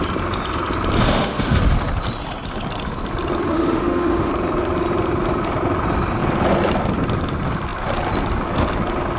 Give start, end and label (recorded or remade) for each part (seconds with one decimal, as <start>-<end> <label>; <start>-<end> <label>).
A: 0.0-1.0 recorded; 1.0-1.6 remade; 1.6-3.5 recorded; 3.5-4.3 remade; 4.3-9.2 recorded